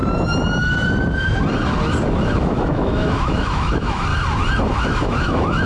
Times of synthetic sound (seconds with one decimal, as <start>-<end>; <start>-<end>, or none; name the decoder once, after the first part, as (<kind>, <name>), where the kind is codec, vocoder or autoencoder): 2.2-4.1 (autoencoder, DAC-VAE); 4.8-5.7